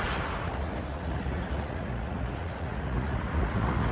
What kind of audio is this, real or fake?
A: fake